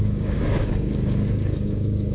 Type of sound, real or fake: fake